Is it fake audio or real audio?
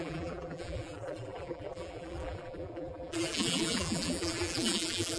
fake